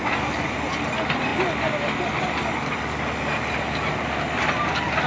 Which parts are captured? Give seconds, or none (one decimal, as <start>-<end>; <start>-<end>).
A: 0.0-5.1